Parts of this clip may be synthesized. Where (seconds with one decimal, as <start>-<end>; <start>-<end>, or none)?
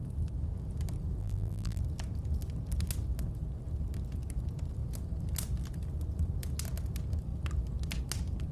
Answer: 1.2-1.8